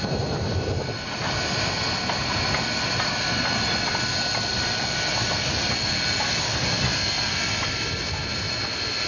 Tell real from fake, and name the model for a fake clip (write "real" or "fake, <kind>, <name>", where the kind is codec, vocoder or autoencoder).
real